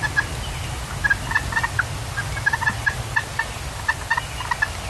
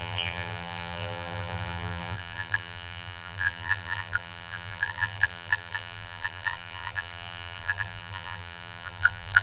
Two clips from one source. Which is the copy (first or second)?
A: second